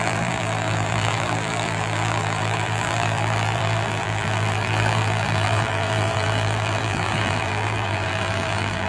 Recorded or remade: remade